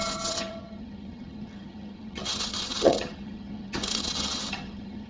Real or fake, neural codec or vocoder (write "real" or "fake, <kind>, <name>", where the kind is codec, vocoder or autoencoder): fake, vocoder, HiFi-GAN